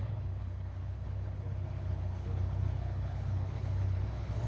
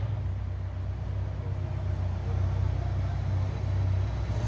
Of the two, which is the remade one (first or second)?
first